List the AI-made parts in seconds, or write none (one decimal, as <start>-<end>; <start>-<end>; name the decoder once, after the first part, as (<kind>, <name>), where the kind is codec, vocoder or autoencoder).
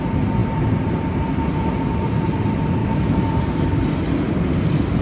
2.8-3.3 (autoencoder, DAC-VAE)